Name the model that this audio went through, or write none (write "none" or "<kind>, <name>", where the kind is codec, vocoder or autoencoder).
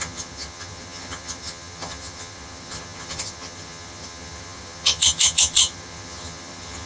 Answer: vocoder, HiFi-GAN